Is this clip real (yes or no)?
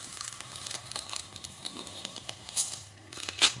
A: no